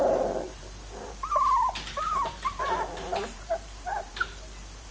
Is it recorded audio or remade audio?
remade